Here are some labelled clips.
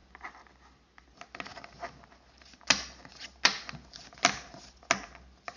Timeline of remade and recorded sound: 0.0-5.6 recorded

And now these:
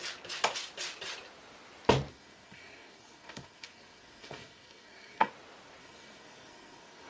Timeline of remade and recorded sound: 0.0-2.1 recorded; 2.1-5.3 remade; 5.3-5.8 recorded; 5.8-7.1 remade

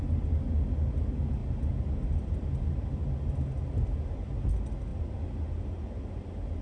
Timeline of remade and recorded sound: 0.0-6.6 recorded

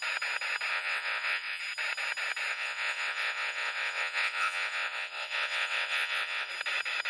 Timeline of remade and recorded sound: 0.0-0.7 recorded; 0.7-1.6 remade; 1.6-2.5 recorded; 2.5-6.5 remade; 6.5-7.1 recorded

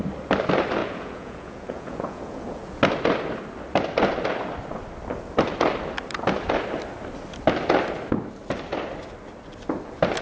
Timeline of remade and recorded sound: 0.0-0.8 recorded; 0.8-2.7 remade; 2.7-10.2 recorded

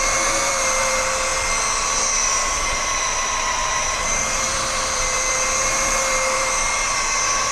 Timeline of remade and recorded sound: 0.0-1.3 remade; 1.3-2.0 recorded; 2.0-7.5 remade

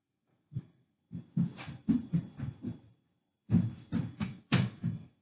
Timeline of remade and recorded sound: 0.0-1.0 remade; 1.0-4.1 recorded; 4.1-5.2 remade